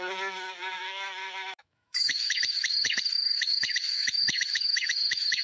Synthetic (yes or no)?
yes